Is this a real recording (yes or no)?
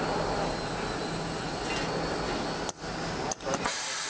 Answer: yes